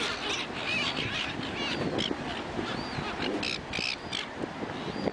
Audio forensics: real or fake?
fake